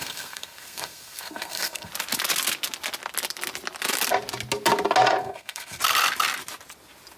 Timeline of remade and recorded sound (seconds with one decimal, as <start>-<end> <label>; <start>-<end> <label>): 0.0-1.9 remade; 1.9-5.2 recorded; 5.2-5.8 remade; 5.8-7.2 recorded

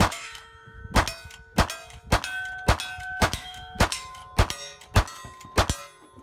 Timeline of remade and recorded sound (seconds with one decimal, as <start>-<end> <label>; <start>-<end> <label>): 0.0-0.8 remade; 0.8-3.0 recorded; 3.0-4.2 remade; 4.2-6.2 recorded

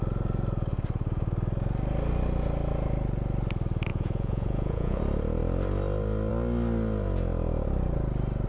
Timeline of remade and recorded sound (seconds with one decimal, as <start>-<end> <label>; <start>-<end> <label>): 0.0-3.9 recorded; 3.9-5.0 remade; 5.0-8.5 recorded

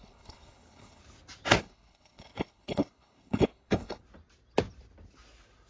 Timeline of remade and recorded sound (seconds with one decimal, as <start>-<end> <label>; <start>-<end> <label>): 0.0-1.0 remade; 1.0-1.6 recorded; 1.6-4.0 remade; 4.0-5.7 recorded

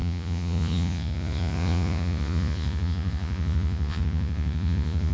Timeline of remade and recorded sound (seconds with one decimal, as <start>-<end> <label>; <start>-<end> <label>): 0.0-5.1 remade